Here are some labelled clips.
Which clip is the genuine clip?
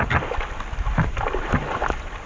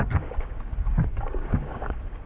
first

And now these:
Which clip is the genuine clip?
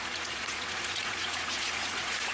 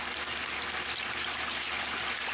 second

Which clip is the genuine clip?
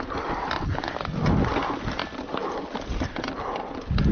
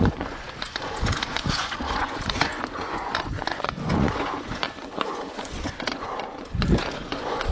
first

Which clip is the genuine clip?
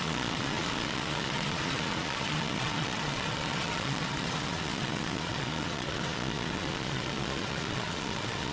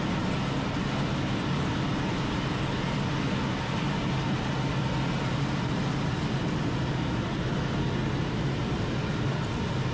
second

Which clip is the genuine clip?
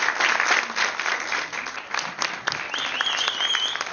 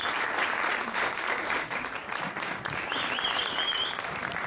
first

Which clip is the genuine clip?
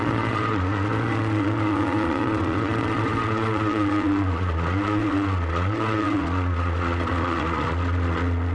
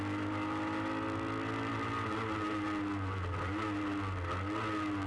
second